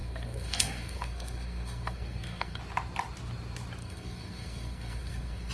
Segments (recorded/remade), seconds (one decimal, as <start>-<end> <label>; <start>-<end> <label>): 0.0-2.6 remade; 2.6-3.8 recorded; 3.8-5.5 remade